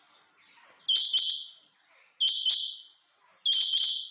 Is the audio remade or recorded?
recorded